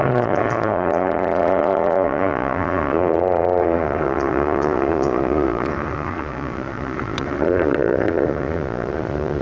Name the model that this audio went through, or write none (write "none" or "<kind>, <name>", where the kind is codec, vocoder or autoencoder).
vocoder, Vocos